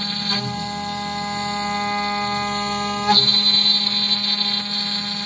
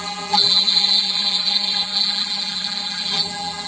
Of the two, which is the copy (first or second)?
second